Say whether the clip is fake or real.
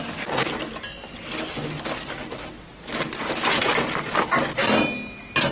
real